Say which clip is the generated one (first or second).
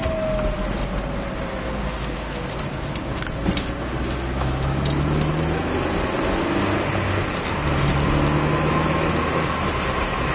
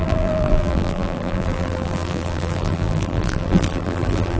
second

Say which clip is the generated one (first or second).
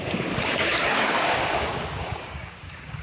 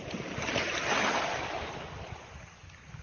first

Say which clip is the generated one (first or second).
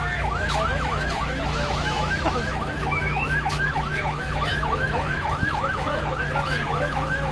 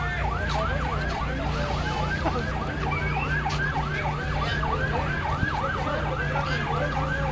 first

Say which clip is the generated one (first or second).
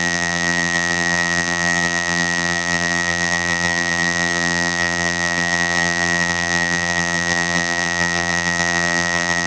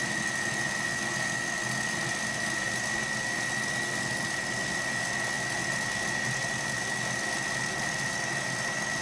first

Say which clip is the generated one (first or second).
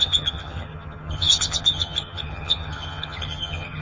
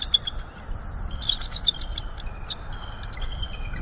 first